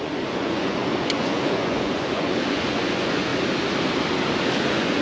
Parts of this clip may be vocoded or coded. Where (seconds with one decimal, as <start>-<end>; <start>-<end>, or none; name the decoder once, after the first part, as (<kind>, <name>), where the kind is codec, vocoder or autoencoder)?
0.0-3.3 (vocoder, Vocos); 4.6-5.0